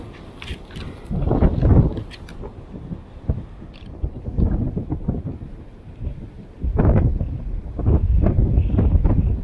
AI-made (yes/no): no